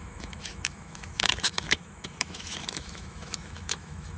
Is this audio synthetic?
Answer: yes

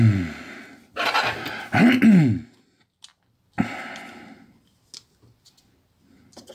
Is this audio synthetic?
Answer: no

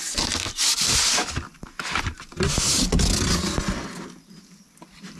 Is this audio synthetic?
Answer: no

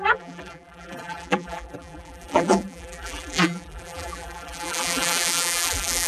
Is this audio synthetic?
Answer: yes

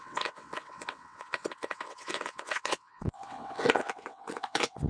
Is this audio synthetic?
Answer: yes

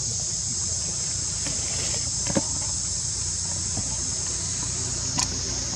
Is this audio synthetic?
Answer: no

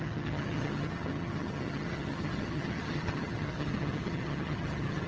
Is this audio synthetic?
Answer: yes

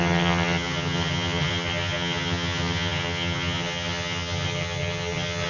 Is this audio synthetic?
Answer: yes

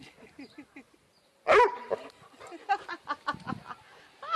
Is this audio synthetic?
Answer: no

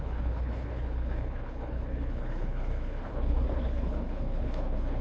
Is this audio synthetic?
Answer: yes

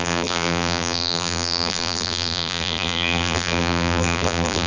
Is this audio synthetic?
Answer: yes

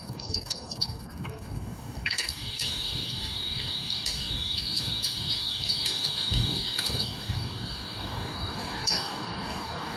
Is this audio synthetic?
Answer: yes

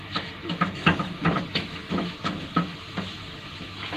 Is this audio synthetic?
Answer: yes